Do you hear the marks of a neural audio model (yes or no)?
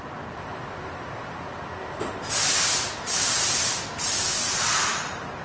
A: yes